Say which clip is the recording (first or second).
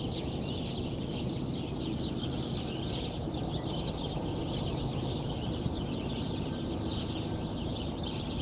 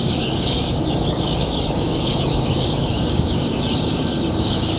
first